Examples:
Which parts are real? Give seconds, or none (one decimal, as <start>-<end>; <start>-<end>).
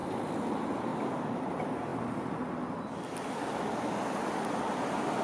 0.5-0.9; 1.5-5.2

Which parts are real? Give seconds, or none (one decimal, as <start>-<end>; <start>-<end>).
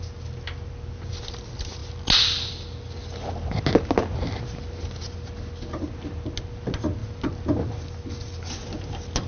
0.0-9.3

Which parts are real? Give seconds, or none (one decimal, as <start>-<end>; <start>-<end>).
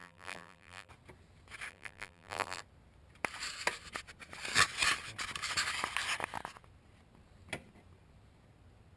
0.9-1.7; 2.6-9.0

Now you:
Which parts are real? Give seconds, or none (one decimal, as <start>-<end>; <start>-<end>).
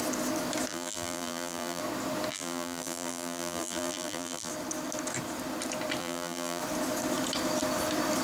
0.0-0.7; 1.8-2.3; 4.5-6.0; 6.6-8.2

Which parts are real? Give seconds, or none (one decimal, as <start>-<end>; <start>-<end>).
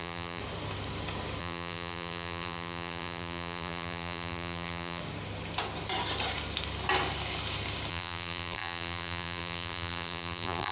0.4-1.4; 5.0-7.9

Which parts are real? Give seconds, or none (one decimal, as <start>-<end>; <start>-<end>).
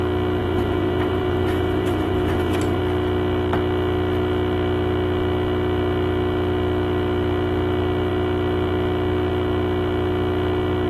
0.0-0.4; 2.8-10.9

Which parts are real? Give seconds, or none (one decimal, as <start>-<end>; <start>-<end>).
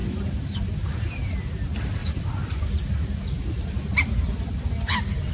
1.4-2.0